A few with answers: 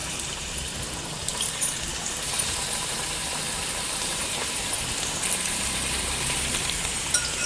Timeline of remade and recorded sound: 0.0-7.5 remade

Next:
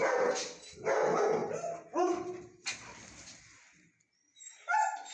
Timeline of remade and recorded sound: 0.0-5.1 recorded

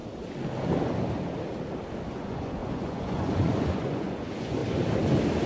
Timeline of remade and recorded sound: 0.0-2.1 recorded; 2.1-4.6 remade; 4.6-5.5 recorded

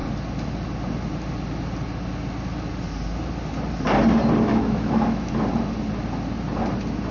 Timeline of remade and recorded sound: 0.0-4.5 recorded; 4.5-5.3 remade; 5.3-7.1 recorded

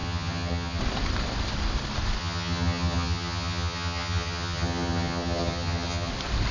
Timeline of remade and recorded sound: 0.0-0.8 remade; 0.8-2.2 recorded; 2.2-6.1 remade; 6.1-6.5 recorded

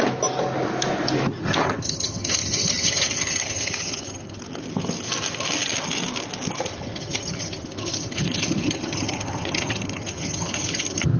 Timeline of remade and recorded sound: 0.0-1.4 recorded; 1.4-4.4 remade; 4.4-6.7 recorded; 6.7-11.2 remade

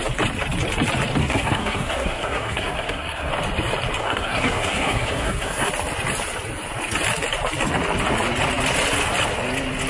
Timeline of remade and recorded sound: 0.0-1.2 recorded; 1.2-3.3 remade; 3.3-4.0 recorded; 4.0-5.7 remade; 5.7-9.9 recorded

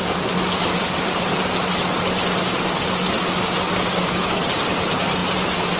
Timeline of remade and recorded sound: 0.0-5.8 recorded